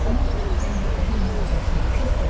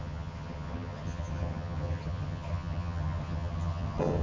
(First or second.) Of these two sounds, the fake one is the second